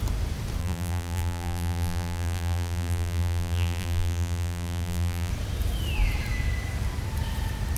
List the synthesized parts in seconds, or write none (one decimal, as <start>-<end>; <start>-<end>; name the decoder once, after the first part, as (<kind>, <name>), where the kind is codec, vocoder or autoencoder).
0.6-5.3 (vocoder, BigVGAN v2)